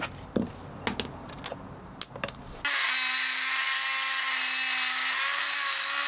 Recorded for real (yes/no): yes